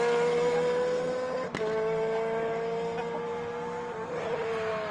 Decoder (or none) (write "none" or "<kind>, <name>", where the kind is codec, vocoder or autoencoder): none